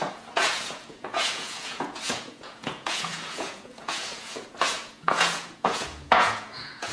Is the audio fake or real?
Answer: fake